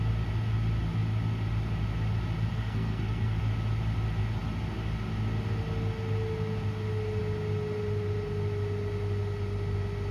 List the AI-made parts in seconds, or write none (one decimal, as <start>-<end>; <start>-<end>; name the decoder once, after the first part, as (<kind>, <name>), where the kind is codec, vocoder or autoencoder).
2.5-3.4 (codec, SNAC)